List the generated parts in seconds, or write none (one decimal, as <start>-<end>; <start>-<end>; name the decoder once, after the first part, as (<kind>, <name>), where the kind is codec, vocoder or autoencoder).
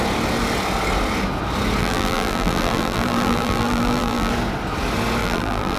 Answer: 1.8-4.3 (vocoder, BigVGAN v2); 5.2-5.8